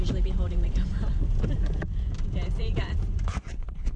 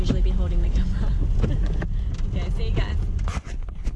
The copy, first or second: first